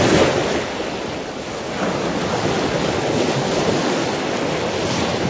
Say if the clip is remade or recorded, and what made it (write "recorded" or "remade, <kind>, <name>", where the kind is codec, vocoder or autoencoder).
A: recorded